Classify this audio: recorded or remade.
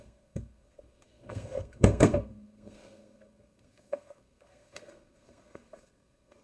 remade